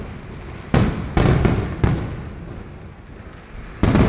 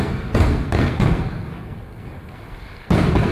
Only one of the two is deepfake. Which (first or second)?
second